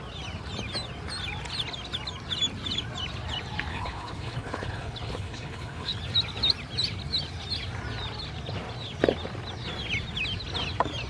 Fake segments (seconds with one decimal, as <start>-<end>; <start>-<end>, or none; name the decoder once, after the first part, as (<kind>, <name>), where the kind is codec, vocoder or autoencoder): 3.7-6.0 (codec, HILCodec)